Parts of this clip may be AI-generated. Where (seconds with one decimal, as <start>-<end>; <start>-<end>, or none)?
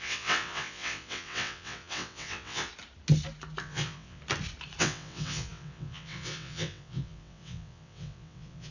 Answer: 0.0-2.7; 3.6-4.2; 4.8-8.7